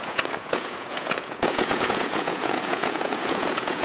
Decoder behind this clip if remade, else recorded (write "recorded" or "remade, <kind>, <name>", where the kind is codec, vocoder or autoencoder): remade, vocoder, Vocos